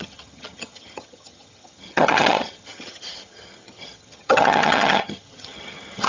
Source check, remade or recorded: remade